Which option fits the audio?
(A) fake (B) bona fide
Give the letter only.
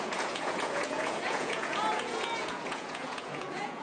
A